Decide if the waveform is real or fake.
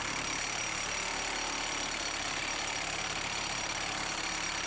real